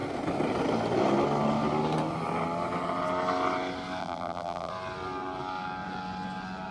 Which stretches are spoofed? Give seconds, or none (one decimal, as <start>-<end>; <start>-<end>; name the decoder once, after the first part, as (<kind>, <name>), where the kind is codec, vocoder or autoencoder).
4.0-4.7 (vocoder, BigVGAN v2)